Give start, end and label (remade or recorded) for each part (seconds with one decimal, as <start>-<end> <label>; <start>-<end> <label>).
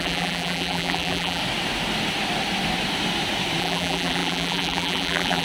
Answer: 0.0-1.4 remade; 1.4-3.6 recorded; 3.6-5.4 remade